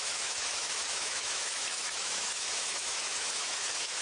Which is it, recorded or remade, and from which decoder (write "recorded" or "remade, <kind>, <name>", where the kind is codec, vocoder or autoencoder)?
remade, autoencoder, DAC-VAE